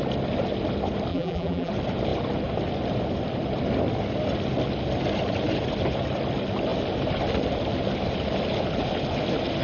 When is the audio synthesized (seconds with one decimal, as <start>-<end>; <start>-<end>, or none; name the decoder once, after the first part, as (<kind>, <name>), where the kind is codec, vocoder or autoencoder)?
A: 1.1-1.7 (vocoder, BigVGAN v2)